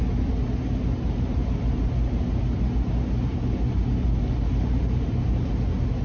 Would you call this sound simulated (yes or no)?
no